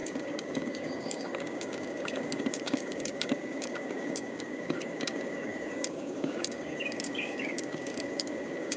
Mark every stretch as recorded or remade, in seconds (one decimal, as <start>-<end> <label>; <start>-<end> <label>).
0.0-8.8 remade

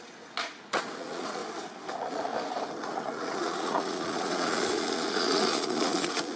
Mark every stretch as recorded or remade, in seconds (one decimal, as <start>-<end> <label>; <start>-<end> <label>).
0.0-1.4 remade; 1.4-1.9 recorded; 1.9-2.3 remade; 2.3-2.8 recorded; 2.8-6.4 remade